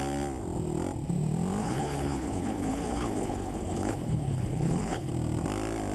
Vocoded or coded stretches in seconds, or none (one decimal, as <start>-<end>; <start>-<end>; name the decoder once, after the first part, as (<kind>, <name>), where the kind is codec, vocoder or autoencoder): 1.6-5.1 (codec, HILCodec)